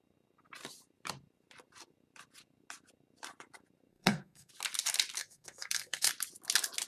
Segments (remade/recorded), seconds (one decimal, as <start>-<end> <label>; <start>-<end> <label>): 0.0-3.9 recorded; 3.9-4.5 remade; 4.5-5.2 recorded; 5.2-6.1 remade; 6.1-6.9 recorded